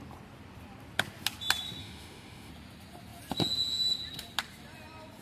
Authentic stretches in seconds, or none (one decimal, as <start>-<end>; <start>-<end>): 0.0-1.8; 2.5-5.2